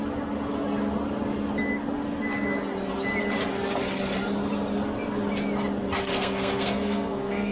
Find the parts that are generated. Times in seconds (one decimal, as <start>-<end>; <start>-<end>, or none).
6.1-7.5